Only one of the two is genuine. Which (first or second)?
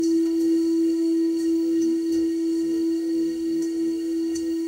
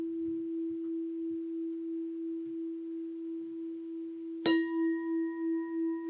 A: second